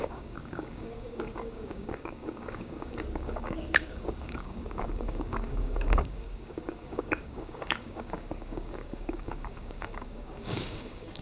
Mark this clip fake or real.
fake